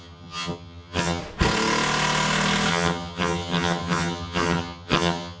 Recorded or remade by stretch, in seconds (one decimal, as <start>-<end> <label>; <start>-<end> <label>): 0.0-1.2 remade; 1.2-2.7 recorded; 2.7-5.4 remade

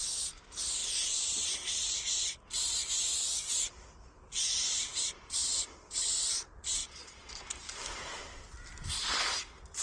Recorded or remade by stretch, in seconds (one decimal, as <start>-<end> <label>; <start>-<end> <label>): 0.0-6.8 recorded; 6.8-7.3 remade; 7.3-9.8 recorded

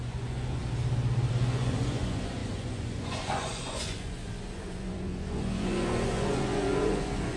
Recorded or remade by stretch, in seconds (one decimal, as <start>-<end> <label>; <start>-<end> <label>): 0.0-0.6 remade; 0.6-1.3 recorded; 1.3-7.4 remade

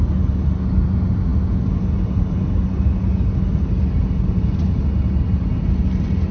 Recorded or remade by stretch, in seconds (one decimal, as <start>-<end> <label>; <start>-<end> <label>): 0.0-6.3 recorded

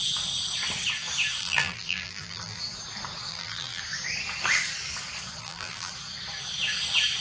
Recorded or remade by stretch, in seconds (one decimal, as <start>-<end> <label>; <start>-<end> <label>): 0.0-1.4 recorded; 1.4-2.6 remade; 2.6-3.3 recorded; 3.3-3.8 remade; 3.8-5.4 recorded; 5.4-5.9 remade; 5.9-7.2 recorded